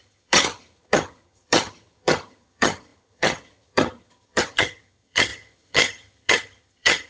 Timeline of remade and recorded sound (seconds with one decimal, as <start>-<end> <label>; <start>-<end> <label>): 0.0-7.1 remade